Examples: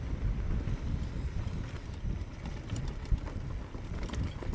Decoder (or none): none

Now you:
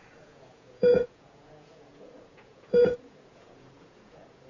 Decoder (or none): vocoder, Vocos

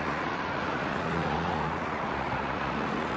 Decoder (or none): vocoder, Vocos